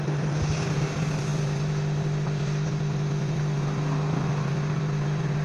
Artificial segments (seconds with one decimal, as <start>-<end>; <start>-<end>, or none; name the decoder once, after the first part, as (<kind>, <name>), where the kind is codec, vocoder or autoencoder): none